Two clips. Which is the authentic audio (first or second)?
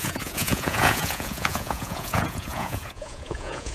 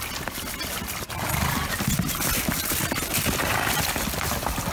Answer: second